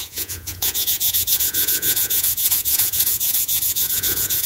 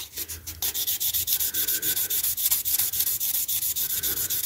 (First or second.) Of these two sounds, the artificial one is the first